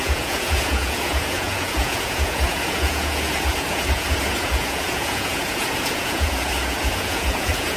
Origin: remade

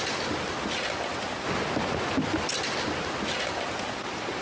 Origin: recorded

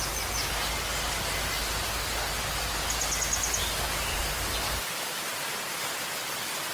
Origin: recorded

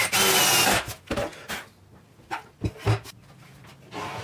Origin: recorded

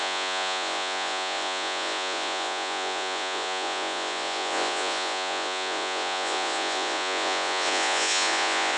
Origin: remade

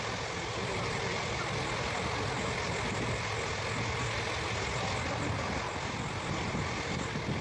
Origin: recorded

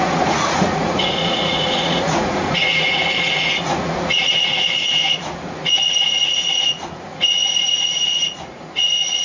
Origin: remade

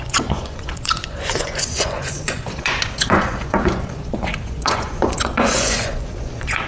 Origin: remade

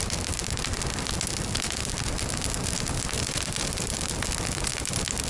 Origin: recorded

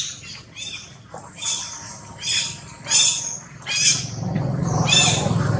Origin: recorded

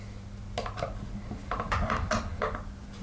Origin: recorded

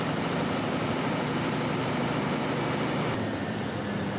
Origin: recorded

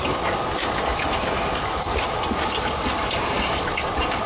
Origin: recorded